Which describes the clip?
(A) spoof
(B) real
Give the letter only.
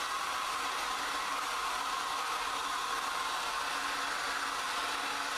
B